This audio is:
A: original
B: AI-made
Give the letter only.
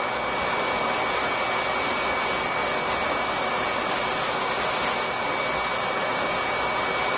A